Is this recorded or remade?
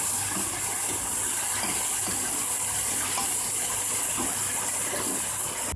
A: recorded